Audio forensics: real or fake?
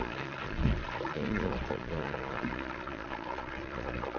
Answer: fake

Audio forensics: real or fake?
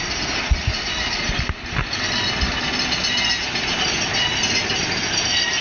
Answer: real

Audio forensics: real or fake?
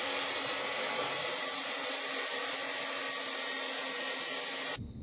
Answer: real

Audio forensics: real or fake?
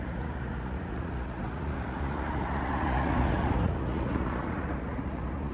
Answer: fake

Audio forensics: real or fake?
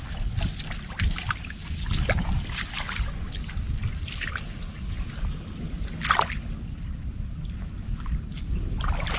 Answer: real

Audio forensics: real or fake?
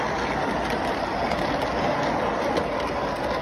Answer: real